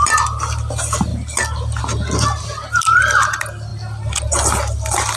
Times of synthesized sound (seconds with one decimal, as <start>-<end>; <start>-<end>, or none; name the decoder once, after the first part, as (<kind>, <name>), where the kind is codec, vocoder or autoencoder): none